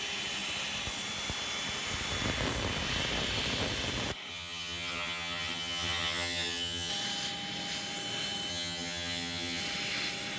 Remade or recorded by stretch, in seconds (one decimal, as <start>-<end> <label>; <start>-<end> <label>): 0.0-4.3 recorded; 4.3-6.9 remade; 6.9-8.5 recorded; 8.5-9.6 remade; 9.6-10.4 recorded